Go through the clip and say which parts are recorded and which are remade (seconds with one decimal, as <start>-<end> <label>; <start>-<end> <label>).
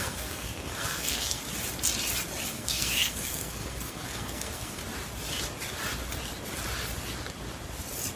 0.0-1.4 remade; 1.4-2.5 recorded; 2.5-4.8 remade; 4.8-8.2 recorded